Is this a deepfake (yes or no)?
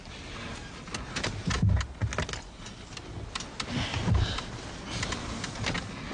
no